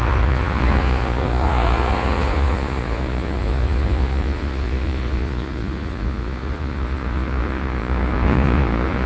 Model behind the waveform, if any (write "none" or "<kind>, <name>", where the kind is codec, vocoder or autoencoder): vocoder, Vocos